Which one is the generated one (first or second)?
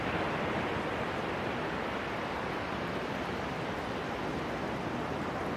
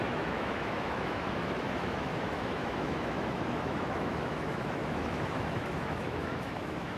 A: second